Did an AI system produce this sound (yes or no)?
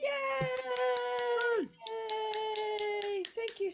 no